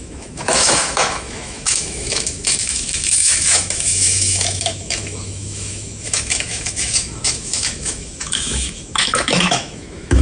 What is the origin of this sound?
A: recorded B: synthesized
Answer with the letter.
B